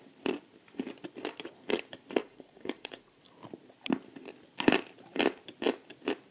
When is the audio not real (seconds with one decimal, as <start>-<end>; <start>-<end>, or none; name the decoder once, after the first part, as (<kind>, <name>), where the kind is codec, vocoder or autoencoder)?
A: 2.2-3.2 (vocoder, Vocos)